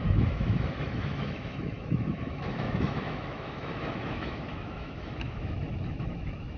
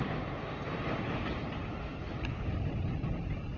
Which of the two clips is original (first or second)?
second